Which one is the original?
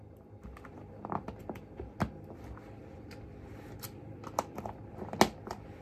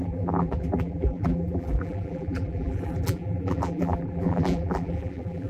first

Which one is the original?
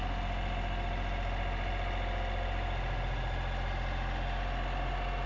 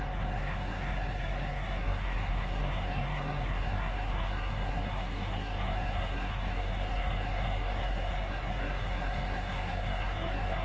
first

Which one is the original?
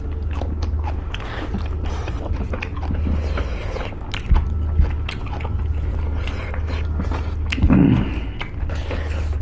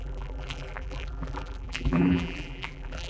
first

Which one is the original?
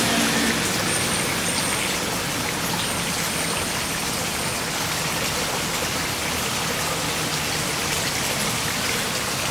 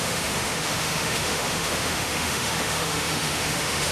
first